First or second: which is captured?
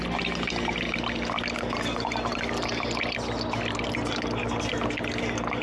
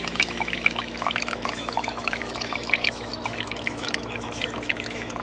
first